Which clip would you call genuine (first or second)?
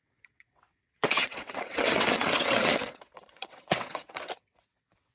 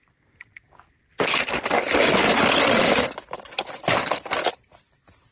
second